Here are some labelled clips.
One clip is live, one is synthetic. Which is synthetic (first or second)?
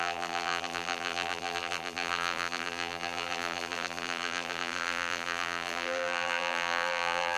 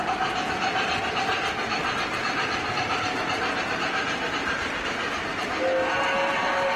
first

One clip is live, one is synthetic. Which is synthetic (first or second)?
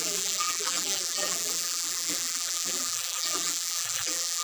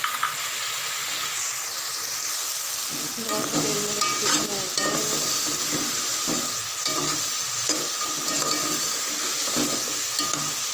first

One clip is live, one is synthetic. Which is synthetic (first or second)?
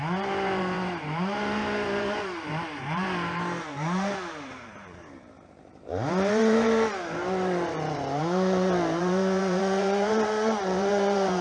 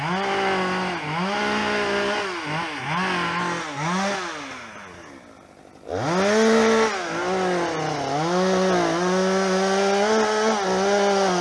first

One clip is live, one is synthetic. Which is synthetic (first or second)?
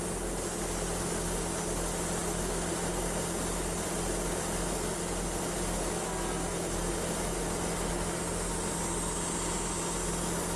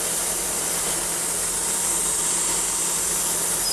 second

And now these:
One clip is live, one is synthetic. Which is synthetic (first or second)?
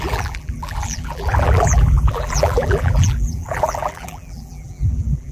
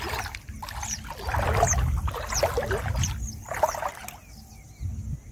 first